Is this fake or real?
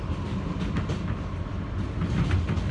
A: real